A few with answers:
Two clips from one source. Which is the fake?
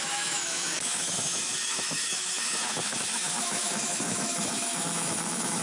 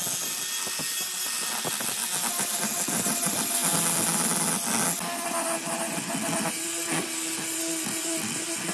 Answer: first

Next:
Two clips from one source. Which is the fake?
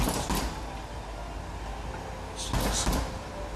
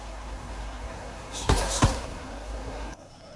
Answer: second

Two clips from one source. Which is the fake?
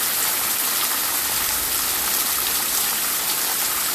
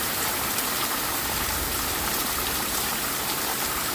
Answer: second